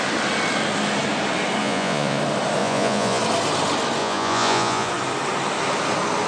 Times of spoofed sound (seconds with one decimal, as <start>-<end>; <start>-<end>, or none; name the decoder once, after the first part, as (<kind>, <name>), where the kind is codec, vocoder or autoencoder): 1.6-2.2 (vocoder, Vocos); 2.6-3.2; 4.0-4.9